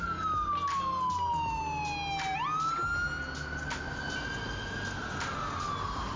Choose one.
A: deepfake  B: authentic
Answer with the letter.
B